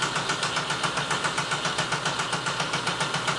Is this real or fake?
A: real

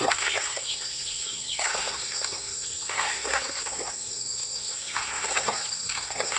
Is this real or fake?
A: fake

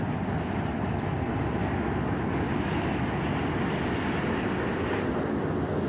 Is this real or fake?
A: real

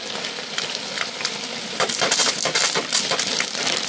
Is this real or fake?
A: fake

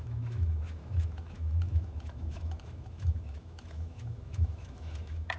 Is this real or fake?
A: fake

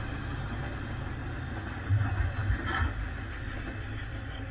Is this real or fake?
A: real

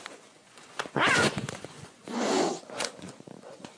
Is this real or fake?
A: fake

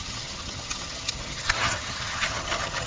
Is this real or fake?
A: fake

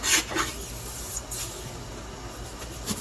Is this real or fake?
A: real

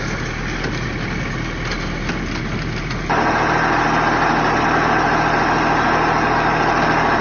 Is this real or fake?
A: real